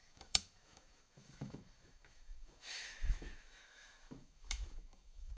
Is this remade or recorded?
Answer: remade